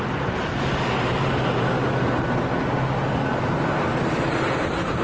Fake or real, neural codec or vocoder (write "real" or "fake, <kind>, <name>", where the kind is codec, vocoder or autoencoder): real